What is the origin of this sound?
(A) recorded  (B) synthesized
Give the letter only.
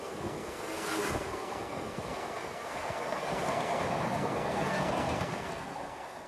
B